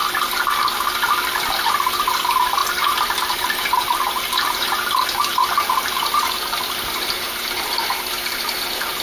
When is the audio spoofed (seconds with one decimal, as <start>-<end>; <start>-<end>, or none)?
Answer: 1.6-9.0